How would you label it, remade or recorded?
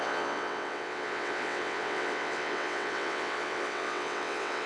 remade